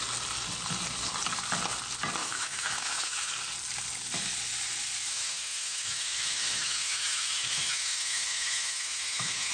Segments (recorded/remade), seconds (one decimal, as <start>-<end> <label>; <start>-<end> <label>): 0.0-2.2 recorded; 2.2-3.3 remade; 3.3-5.1 recorded; 5.1-9.5 remade